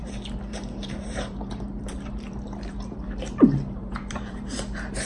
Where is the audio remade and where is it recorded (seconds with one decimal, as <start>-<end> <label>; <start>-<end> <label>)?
0.0-0.5 recorded; 0.5-5.0 remade